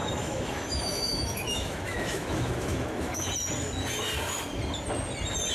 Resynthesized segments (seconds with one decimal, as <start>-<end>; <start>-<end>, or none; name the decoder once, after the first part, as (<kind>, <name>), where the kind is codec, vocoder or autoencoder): 0.0-3.3 (autoencoder, DAC-VAE)